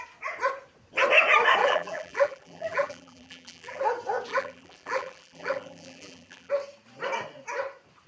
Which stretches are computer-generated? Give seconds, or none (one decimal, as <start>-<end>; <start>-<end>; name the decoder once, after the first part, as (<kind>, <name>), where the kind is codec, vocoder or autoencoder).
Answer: 1.6-3.8 (vocoder, BigVGAN v2); 4.3-6.5